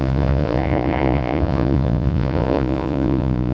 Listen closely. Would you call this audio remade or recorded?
remade